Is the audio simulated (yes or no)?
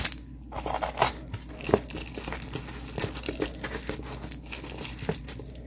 no